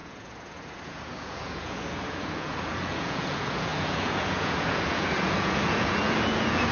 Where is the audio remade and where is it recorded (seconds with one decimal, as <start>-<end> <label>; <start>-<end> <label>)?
0.0-6.7 remade